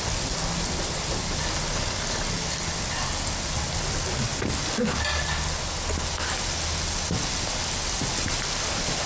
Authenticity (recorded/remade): recorded